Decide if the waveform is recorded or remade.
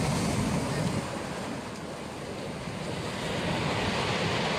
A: recorded